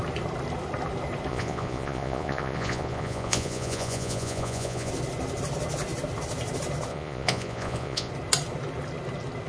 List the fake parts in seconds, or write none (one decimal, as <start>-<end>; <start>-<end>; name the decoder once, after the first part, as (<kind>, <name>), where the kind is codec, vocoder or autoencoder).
1.3-4.9 (vocoder, Vocos); 6.9-8.1